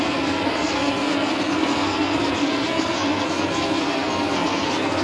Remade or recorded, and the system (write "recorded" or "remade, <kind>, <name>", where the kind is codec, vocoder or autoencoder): remade, codec, SNAC